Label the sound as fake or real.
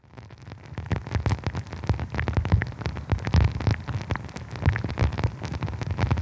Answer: real